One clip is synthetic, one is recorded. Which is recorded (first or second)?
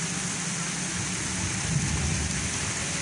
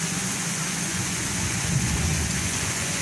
first